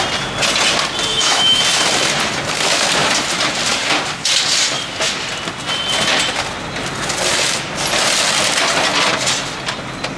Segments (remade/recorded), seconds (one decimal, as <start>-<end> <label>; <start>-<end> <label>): 0.0-1.1 recorded; 1.1-1.6 remade; 1.6-10.2 recorded

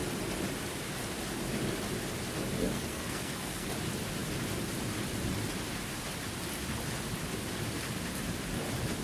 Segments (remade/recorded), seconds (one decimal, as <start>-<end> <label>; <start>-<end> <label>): 0.0-2.6 recorded; 2.6-3.7 remade; 3.7-9.0 recorded

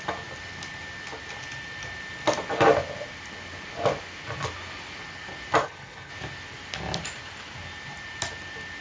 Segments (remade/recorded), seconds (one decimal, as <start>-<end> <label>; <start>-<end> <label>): 0.0-5.6 recorded; 5.6-6.1 remade; 6.1-8.8 recorded

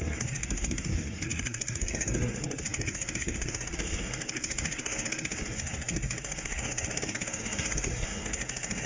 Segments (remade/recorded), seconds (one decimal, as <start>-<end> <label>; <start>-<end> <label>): 0.0-8.9 remade

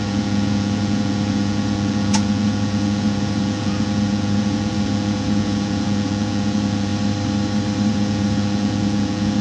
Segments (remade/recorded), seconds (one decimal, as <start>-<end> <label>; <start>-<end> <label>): 0.0-6.9 remade; 6.9-7.9 recorded; 7.9-9.4 remade